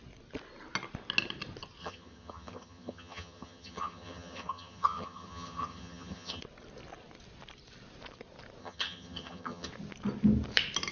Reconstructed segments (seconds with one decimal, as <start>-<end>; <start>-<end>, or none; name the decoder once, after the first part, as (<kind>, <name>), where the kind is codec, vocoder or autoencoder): 1.8-6.4 (vocoder, HiFi-GAN); 8.6-9.7